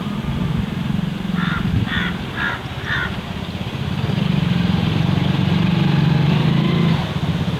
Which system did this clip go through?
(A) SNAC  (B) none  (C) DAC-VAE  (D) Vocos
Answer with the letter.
B